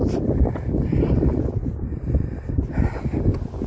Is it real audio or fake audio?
real